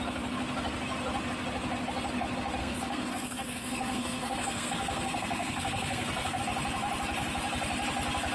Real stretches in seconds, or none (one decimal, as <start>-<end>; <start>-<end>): 0.0-2.6; 6.4-8.3